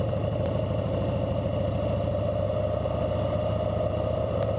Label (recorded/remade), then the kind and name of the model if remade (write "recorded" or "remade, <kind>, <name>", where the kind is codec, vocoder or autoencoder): recorded